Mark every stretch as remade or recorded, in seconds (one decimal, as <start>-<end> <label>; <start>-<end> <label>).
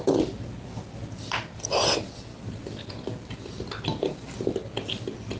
0.0-5.4 recorded